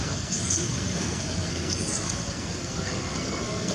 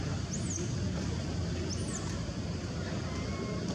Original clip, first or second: second